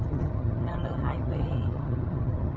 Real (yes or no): no